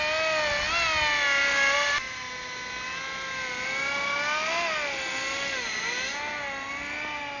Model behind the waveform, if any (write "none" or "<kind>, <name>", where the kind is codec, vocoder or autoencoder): none